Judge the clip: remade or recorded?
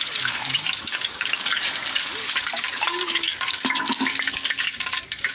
remade